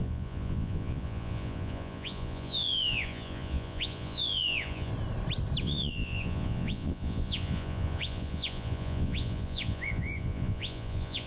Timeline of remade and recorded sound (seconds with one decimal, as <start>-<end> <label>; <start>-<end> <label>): 0.0-4.9 remade; 4.9-5.6 recorded; 5.6-11.3 remade